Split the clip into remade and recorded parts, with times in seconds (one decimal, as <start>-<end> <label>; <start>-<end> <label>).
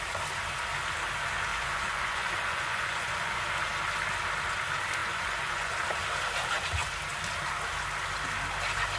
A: 0.0-1.5 recorded; 1.5-3.4 remade; 3.4-5.0 recorded; 5.0-5.7 remade; 5.7-9.0 recorded